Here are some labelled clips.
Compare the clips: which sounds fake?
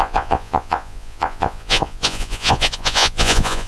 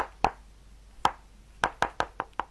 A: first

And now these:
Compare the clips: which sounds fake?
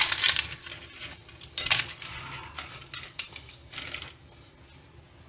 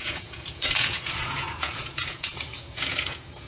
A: second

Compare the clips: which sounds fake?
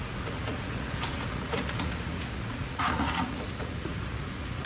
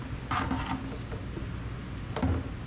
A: first